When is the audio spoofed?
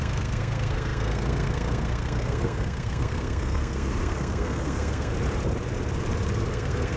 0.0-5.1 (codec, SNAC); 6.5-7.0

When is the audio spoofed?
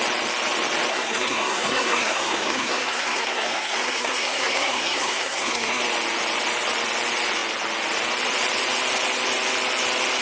0.9-5.8 (codec, SNAC)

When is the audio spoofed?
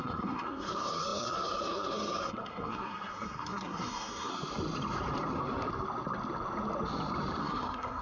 0.0-4.3 (codec, SNAC); 7.4-8.0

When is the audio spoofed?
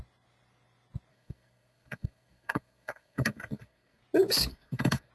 1.1-4.0 (codec, SNAC); 4.5-5.1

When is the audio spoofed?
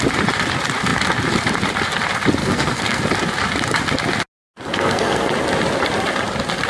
2.4-3.0 (codec, SNAC); 4.7-5.3